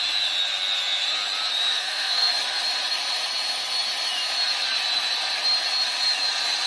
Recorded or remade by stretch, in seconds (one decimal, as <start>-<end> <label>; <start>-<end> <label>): 0.0-1.7 recorded; 1.7-2.3 remade; 2.3-6.7 recorded